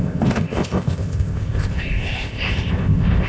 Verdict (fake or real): fake